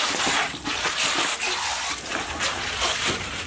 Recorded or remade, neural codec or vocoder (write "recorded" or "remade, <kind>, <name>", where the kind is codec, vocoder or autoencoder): recorded